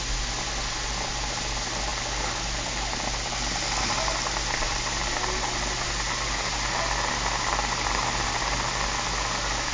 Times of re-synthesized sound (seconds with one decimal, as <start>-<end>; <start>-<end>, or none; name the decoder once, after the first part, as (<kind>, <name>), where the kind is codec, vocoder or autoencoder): none